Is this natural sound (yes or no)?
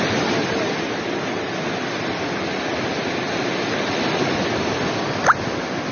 yes